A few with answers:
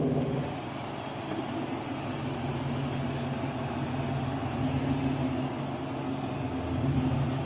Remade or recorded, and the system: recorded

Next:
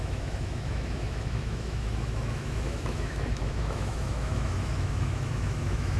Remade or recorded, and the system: remade, autoencoder, DAC-VAE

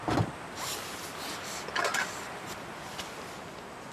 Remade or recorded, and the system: recorded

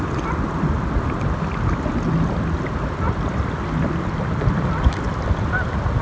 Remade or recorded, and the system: recorded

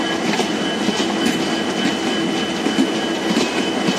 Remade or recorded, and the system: recorded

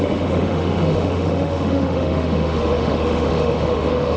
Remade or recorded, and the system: remade, autoencoder, DAC-VAE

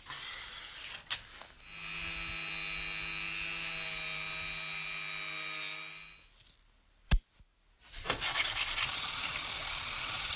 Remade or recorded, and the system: recorded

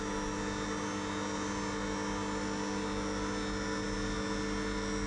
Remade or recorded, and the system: recorded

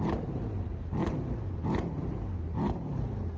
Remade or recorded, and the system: recorded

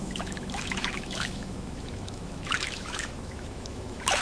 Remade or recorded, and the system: remade, autoencoder, DAC-VAE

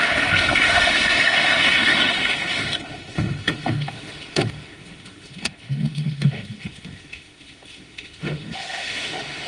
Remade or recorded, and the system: remade, autoencoder, DAC-VAE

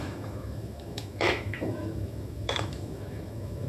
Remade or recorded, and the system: remade, autoencoder, DAC-VAE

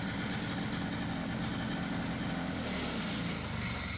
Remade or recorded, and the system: recorded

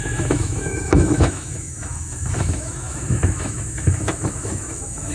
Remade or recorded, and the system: remade, autoencoder, DAC-VAE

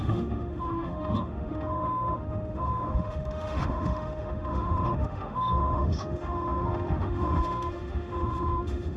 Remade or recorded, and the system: remade, autoencoder, DAC-VAE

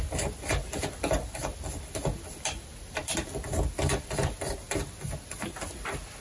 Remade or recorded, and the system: recorded